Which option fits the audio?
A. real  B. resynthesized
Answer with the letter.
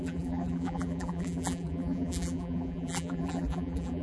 B